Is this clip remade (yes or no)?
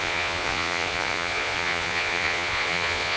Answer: yes